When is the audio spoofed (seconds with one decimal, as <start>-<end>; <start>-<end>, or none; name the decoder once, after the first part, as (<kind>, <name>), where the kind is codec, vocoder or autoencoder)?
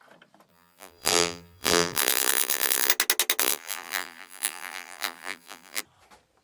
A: 0.5-2.9 (vocoder, BigVGAN v2); 3.4-5.8